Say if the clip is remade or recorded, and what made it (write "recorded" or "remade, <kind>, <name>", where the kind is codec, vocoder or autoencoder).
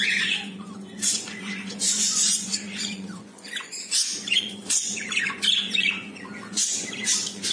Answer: remade, vocoder, Vocos